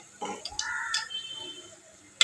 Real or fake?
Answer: real